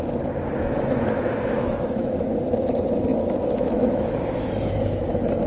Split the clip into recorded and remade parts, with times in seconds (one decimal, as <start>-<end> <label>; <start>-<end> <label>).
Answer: 0.0-5.5 remade